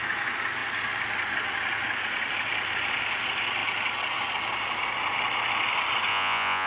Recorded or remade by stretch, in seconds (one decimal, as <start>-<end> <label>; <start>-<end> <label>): 0.0-6.1 recorded; 6.1-6.7 remade